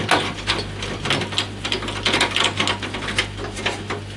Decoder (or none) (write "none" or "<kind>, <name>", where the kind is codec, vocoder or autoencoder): none